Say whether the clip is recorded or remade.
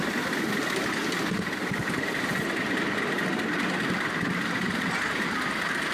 recorded